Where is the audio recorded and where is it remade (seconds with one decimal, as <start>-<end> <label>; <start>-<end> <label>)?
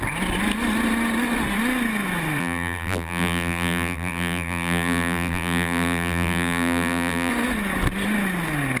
0.0-2.4 recorded; 2.4-7.3 remade; 7.3-8.8 recorded